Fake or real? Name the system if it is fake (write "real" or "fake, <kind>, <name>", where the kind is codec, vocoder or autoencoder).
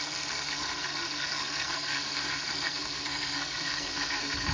fake, codec, SNAC